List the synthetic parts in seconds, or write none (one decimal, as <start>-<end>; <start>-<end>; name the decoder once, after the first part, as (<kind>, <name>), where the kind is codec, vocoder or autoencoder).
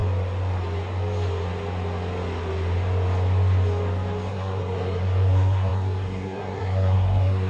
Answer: 4.3-7.5 (codec, SNAC)